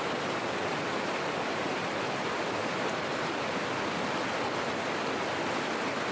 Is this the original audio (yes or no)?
yes